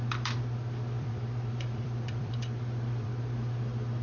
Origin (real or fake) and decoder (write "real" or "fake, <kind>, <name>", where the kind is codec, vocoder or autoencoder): fake, vocoder, BigVGAN v2